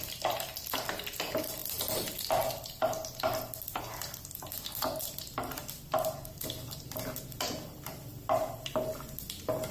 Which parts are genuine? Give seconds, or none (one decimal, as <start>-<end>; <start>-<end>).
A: 0.0-9.7